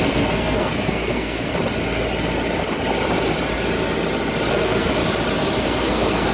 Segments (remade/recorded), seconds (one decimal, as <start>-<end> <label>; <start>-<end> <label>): 0.0-1.5 remade; 1.5-4.5 recorded; 4.5-5.0 remade; 5.0-5.6 recorded; 5.6-6.3 remade